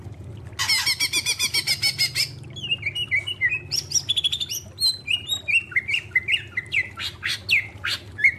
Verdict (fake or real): real